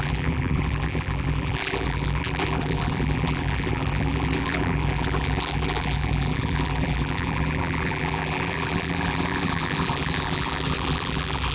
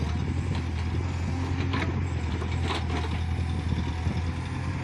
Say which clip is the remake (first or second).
first